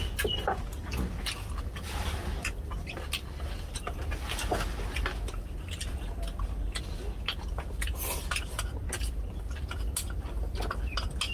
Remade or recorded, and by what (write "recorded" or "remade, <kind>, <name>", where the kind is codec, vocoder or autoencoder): recorded